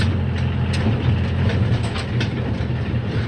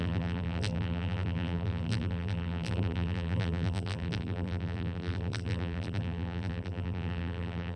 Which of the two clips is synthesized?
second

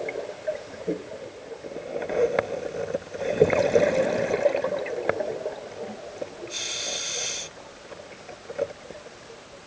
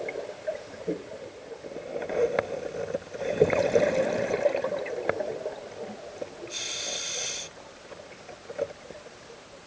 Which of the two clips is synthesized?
second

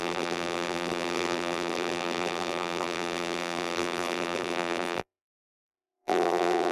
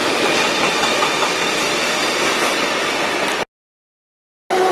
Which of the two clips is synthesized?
first